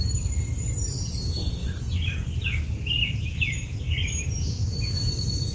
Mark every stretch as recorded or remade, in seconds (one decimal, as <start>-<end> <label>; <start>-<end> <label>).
0.0-1.6 recorded; 1.6-2.4 remade; 2.4-5.5 recorded